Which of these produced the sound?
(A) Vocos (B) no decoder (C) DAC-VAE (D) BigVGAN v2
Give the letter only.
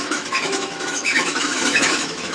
C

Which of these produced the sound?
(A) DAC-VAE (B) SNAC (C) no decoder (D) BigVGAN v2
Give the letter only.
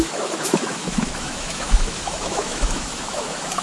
A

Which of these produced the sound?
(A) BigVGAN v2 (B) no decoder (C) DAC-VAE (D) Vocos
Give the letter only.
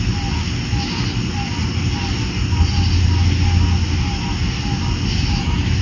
B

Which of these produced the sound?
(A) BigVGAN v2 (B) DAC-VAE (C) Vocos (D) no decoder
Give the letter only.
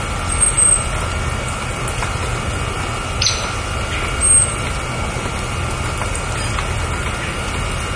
D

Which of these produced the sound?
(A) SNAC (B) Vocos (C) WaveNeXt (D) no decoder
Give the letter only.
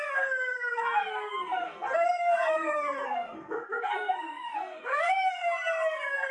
A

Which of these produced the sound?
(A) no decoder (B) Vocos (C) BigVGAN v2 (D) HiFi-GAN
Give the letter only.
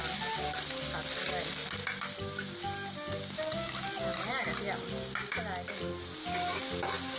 A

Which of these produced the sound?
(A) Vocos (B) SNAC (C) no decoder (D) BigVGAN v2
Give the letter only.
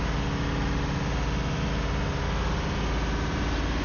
C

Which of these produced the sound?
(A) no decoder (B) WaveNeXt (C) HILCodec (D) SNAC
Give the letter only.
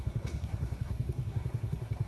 D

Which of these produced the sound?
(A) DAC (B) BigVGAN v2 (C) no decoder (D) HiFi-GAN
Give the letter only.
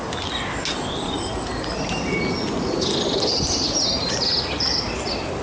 C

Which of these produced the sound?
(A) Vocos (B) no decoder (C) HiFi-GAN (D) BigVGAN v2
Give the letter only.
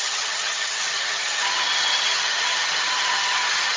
C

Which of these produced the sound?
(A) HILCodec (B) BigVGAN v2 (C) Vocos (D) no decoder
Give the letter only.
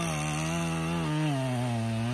D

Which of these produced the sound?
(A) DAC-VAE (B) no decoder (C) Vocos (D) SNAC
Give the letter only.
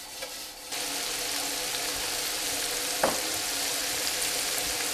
B